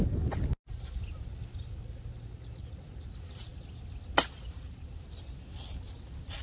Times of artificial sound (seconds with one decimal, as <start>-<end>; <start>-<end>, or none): none